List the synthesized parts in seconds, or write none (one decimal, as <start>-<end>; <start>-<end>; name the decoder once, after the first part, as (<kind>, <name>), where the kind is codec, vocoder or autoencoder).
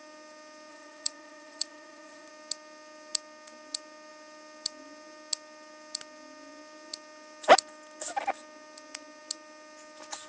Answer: 0.7-2.3 (vocoder, Vocos)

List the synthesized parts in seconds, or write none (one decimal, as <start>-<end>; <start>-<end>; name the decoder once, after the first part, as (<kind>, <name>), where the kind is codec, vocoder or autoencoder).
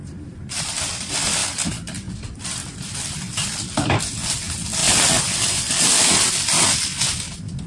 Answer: none